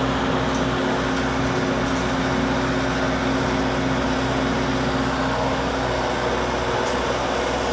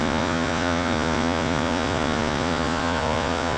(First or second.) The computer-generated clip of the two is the second